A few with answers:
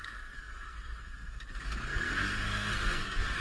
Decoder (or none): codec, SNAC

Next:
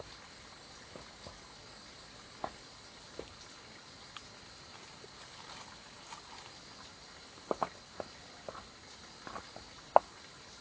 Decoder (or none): none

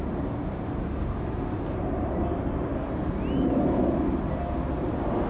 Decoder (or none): none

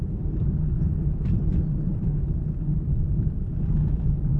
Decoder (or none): none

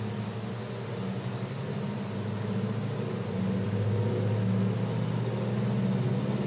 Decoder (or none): none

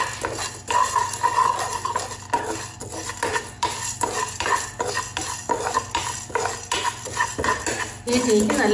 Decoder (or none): none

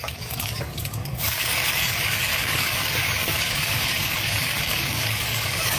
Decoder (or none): codec, DAC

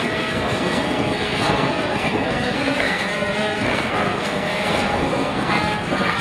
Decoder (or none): codec, SNAC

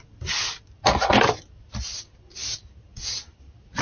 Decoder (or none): none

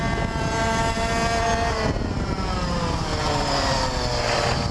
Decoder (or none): none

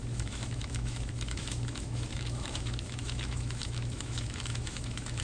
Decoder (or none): autoencoder, DAC-VAE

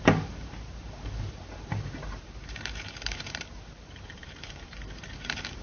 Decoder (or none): vocoder, BigVGAN v2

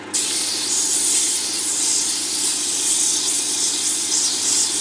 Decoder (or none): none